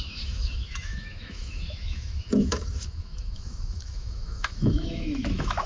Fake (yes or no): yes